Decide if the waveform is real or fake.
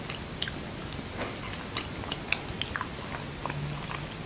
real